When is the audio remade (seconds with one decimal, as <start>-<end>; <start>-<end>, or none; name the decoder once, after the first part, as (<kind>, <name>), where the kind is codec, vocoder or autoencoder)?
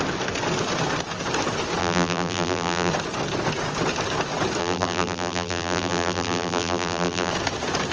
1.8-2.9 (vocoder, BigVGAN v2); 4.6-7.3